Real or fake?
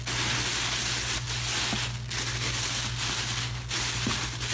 real